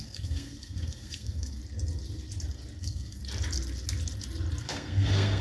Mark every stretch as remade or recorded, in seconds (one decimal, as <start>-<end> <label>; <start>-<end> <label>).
0.0-1.6 remade; 1.6-2.8 recorded; 2.8-3.2 remade; 3.2-4.6 recorded; 4.6-5.4 remade